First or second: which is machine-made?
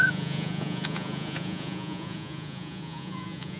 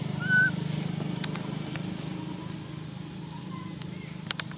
first